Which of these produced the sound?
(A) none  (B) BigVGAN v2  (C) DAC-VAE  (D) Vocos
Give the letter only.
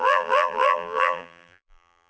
B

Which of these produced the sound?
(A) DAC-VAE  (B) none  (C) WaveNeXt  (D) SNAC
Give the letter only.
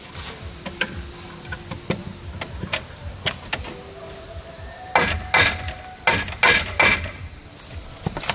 B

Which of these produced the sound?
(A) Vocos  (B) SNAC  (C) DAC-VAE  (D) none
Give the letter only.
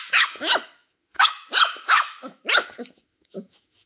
C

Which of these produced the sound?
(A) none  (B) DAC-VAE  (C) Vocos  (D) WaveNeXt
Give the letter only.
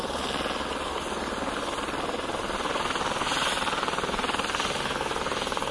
A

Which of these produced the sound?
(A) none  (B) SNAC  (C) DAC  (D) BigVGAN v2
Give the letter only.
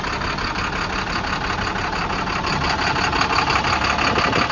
A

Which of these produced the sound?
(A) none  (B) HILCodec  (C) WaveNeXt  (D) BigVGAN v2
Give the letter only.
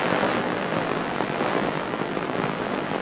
D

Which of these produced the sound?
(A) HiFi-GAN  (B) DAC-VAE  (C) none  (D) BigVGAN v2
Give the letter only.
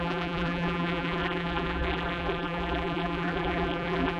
D